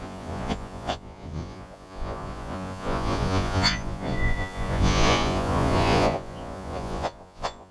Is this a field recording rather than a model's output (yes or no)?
no